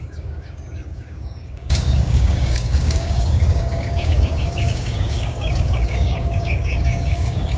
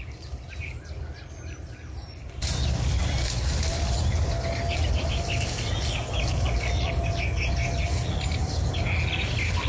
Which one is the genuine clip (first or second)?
second